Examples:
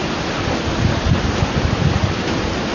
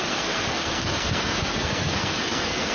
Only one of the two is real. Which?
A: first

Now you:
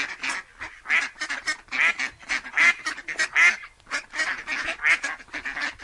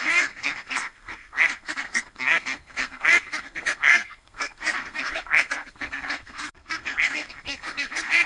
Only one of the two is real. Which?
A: first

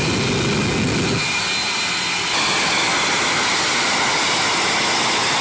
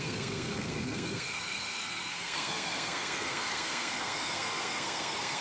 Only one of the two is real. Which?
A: first